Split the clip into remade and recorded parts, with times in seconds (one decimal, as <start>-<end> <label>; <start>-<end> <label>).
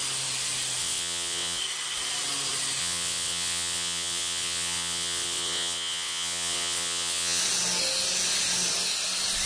0.0-0.8 recorded; 0.8-1.6 remade; 1.6-2.8 recorded; 2.8-7.4 remade; 7.4-9.5 recorded